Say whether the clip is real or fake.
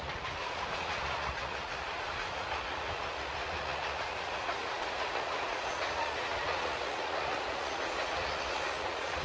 fake